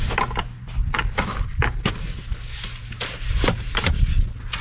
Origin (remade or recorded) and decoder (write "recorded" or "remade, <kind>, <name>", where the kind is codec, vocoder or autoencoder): recorded